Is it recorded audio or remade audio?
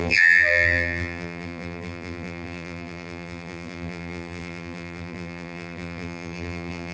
remade